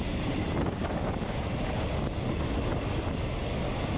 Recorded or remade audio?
recorded